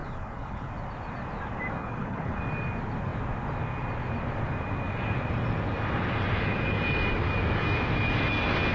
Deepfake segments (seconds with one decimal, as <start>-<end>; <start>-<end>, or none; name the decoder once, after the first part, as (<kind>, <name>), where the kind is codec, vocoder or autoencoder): 0.0-0.7 (codec, HILCodec); 1.8-2.4